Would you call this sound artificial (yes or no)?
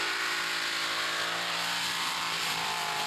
yes